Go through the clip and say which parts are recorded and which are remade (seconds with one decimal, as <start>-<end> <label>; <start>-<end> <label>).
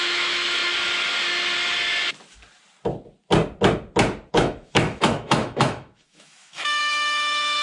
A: 0.0-0.6 remade; 0.6-4.3 recorded; 4.3-7.6 remade